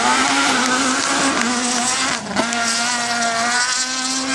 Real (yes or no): yes